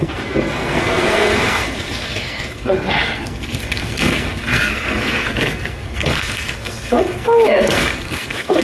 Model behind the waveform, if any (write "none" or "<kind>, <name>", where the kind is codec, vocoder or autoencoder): codec, SNAC